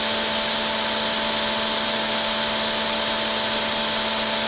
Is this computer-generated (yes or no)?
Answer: no